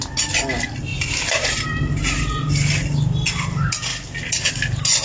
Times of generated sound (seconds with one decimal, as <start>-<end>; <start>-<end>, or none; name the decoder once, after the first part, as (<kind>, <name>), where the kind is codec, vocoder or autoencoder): 0.9-2.5 (vocoder, BigVGAN v2)